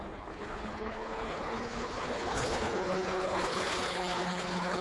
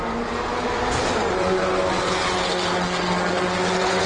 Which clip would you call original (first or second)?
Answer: second